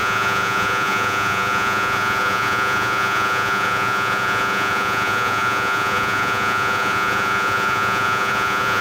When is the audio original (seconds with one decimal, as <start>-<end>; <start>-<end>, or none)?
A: none